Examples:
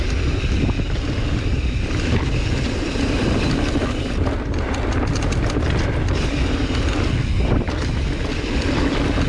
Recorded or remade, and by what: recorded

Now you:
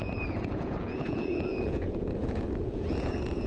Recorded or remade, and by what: remade, vocoder, Vocos